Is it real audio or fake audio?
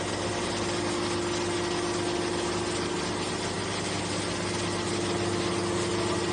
real